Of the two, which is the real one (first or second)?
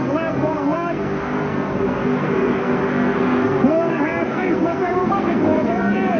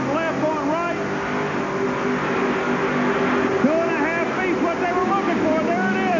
second